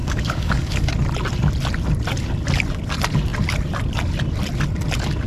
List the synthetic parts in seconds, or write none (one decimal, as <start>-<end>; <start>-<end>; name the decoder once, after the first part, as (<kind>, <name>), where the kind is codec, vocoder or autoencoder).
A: 0.0-0.9 (codec, DAC)